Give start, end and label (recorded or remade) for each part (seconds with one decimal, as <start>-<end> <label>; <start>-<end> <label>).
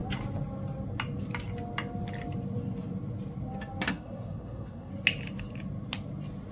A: 0.0-3.9 recorded; 3.9-4.9 remade; 4.9-6.5 recorded